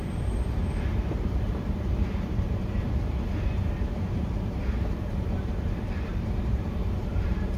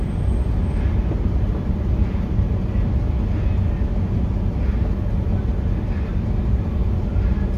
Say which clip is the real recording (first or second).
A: second